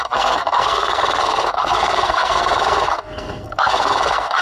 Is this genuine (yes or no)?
no